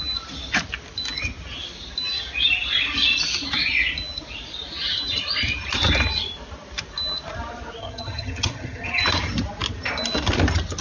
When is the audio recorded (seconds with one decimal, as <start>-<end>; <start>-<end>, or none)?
0.0-7.8; 9.0-10.8

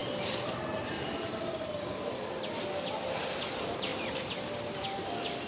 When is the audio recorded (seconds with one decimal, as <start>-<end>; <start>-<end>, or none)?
0.0-5.5

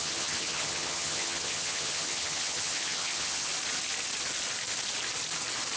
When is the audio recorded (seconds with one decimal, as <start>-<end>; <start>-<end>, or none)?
3.5-5.8

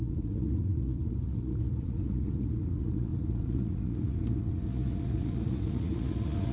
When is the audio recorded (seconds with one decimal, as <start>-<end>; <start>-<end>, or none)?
none

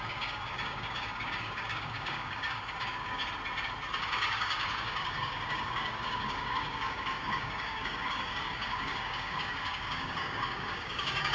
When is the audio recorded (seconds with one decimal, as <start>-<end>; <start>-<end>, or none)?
3.2-4.0

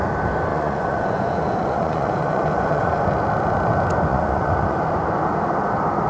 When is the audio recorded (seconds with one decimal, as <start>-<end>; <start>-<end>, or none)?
0.0-0.5; 3.1-4.1; 4.8-6.1